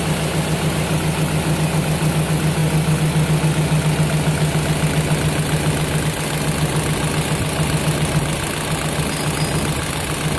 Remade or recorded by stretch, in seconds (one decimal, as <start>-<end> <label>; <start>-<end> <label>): 0.0-10.4 recorded